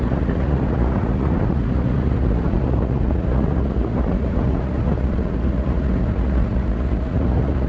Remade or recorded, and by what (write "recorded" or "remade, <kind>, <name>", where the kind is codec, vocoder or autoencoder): remade, vocoder, Vocos